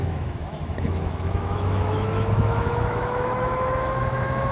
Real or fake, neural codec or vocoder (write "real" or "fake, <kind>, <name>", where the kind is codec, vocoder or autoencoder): fake, autoencoder, DAC-VAE